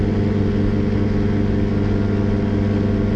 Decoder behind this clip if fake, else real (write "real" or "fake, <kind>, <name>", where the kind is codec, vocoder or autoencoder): real